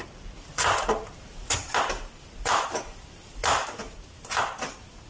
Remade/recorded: recorded